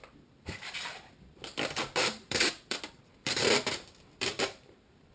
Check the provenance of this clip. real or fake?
fake